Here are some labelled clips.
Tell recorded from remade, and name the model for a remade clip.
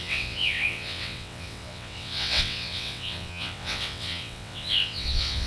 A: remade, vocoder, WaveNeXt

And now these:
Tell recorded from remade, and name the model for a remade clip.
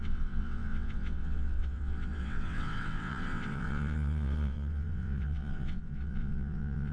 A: remade, vocoder, WaveNeXt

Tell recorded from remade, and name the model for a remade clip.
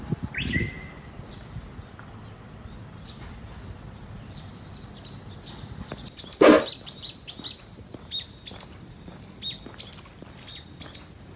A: recorded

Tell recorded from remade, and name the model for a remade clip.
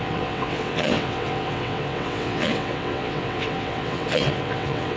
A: remade, vocoder, WaveNeXt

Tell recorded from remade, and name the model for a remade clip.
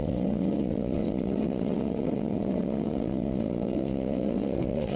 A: remade, vocoder, WaveNeXt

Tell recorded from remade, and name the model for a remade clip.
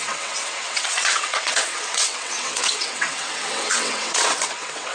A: remade, vocoder, WaveNeXt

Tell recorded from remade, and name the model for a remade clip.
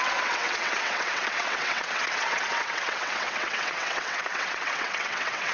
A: remade, vocoder, WaveNeXt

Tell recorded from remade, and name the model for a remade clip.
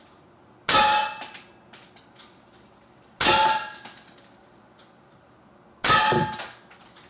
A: recorded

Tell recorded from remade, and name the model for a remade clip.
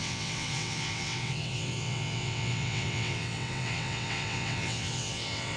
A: remade, vocoder, WaveNeXt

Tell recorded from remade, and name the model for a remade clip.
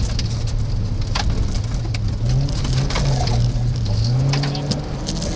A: recorded